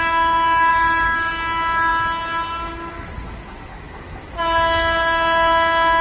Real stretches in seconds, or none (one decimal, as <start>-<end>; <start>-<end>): 0.0-0.7; 1.3-3.7; 4.2-6.0